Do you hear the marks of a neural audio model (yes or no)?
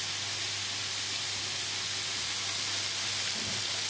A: no